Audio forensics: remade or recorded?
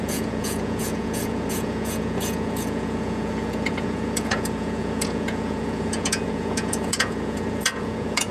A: remade